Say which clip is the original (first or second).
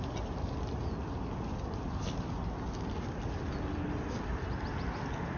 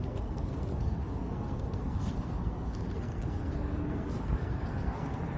first